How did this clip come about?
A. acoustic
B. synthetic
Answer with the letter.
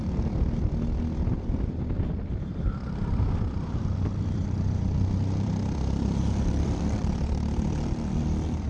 B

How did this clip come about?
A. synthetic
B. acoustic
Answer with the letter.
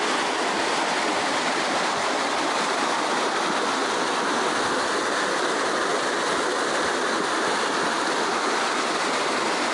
A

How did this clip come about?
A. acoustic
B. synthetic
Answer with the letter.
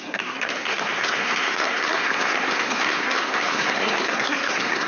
B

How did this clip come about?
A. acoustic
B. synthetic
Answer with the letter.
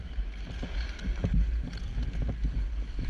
A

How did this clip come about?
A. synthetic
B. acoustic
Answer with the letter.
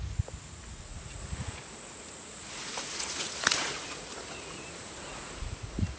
A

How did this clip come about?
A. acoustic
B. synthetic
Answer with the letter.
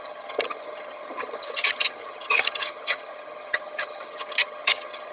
B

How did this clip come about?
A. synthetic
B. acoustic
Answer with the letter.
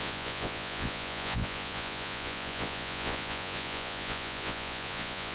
A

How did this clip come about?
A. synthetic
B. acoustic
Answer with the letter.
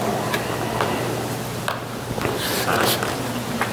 B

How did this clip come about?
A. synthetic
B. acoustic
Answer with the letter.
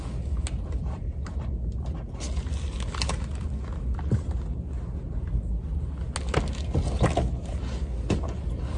B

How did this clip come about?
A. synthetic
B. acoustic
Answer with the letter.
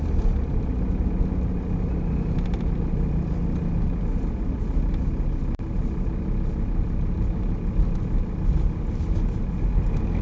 B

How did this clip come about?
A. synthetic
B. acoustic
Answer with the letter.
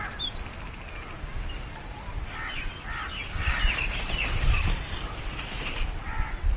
B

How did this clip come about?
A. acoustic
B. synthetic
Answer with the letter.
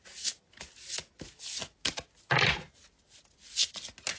A